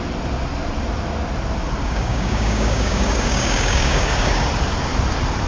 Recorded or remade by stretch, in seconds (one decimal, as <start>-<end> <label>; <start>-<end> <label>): 0.0-1.8 recorded; 1.8-4.5 remade; 4.5-5.5 recorded